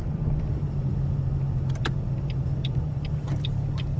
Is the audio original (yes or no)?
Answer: no